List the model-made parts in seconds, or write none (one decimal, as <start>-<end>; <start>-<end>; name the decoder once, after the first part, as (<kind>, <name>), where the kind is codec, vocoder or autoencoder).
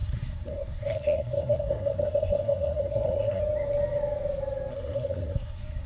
0.0-3.4 (codec, SNAC); 4.7-5.9